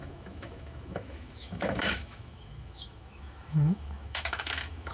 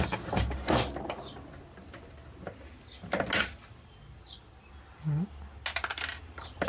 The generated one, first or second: first